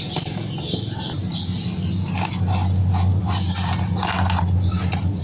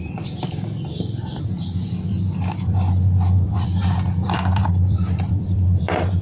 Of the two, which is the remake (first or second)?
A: second